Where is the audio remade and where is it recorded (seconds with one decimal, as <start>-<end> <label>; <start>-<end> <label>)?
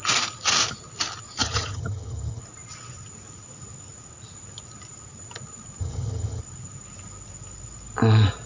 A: 0.0-1.4 recorded; 1.4-2.4 remade; 2.4-5.8 recorded; 5.8-6.4 remade; 6.4-8.5 recorded